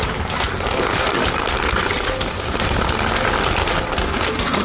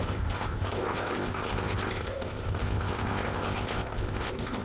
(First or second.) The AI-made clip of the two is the second